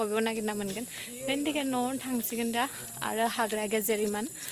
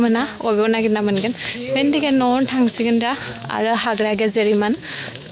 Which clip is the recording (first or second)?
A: first